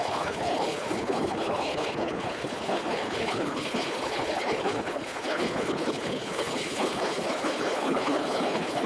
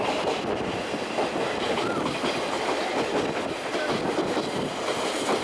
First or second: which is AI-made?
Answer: first